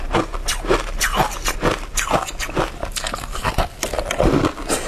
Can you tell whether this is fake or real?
real